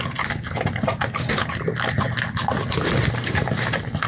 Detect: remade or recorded recorded